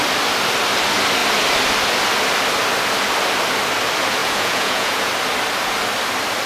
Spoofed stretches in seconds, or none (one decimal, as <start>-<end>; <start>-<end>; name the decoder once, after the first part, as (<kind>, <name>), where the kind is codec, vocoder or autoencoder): 4.2-5.1 (vocoder, Vocos)